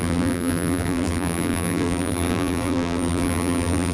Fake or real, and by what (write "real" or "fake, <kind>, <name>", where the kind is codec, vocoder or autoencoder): fake, vocoder, BigVGAN v2